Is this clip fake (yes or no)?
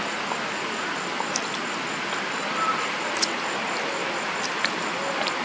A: no